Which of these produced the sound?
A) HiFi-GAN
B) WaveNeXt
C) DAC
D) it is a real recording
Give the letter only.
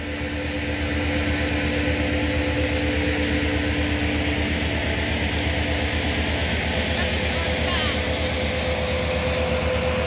D